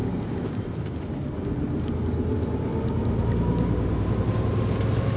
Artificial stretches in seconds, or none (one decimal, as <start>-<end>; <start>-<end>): none

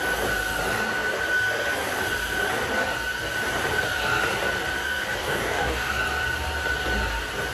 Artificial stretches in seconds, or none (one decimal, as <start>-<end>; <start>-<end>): 5.2-6.0

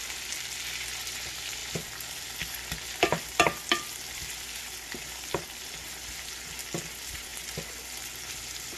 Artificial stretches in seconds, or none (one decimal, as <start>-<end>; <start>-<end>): none